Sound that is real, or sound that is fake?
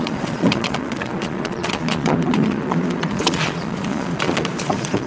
fake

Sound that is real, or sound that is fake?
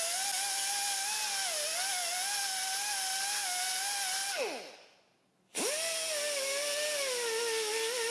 real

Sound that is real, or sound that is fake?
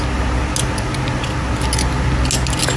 real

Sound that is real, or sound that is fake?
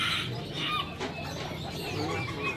real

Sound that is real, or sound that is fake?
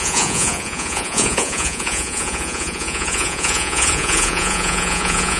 fake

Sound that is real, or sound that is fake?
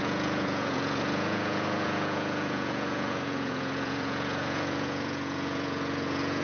fake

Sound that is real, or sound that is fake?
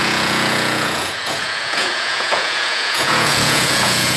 fake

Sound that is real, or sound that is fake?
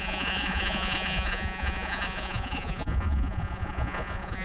fake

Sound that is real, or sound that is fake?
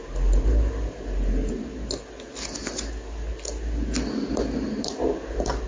real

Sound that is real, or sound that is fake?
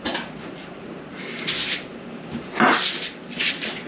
real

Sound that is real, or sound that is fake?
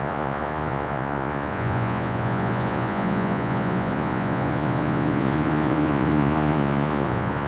fake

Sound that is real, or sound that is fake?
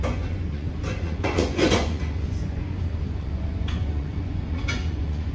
fake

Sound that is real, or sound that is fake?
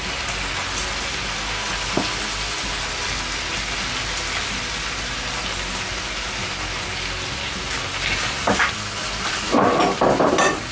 real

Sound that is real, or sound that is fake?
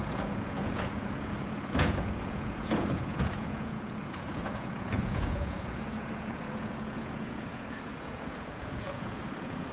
fake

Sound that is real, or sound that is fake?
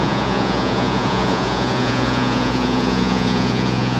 fake